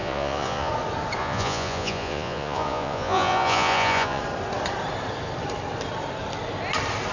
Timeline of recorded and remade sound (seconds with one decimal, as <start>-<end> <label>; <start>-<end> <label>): 0.0-0.7 remade; 0.7-1.2 recorded; 1.2-4.2 remade; 4.2-7.1 recorded